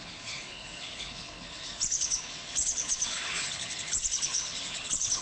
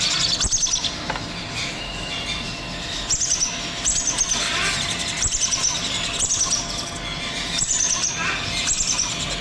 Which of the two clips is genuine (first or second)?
second